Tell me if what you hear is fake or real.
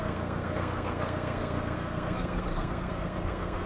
fake